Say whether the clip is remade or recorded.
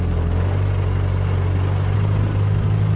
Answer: recorded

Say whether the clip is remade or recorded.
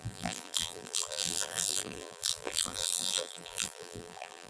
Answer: remade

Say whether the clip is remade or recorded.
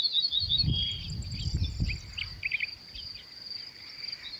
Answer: recorded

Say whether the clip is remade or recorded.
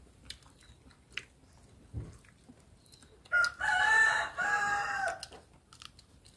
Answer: recorded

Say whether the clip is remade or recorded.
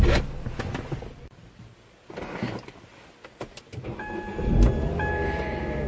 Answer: recorded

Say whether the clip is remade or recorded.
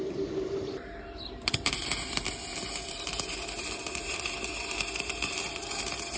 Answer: remade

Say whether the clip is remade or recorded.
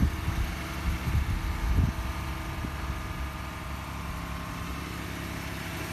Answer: recorded